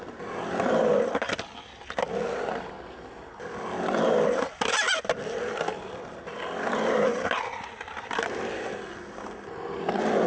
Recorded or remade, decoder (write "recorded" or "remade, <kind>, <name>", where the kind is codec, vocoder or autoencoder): recorded